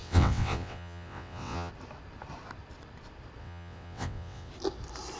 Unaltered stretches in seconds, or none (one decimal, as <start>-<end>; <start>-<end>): 1.7-3.4; 4.5-5.2